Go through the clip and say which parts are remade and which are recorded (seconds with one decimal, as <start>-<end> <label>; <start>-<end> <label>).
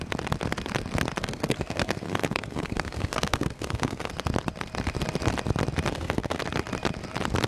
0.0-1.2 recorded; 1.2-4.1 remade; 4.1-5.9 recorded; 5.9-6.4 remade; 6.4-7.5 recorded